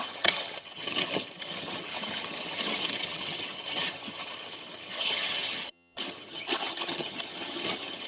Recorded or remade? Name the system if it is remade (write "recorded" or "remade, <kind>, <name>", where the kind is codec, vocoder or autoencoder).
remade, vocoder, HiFi-GAN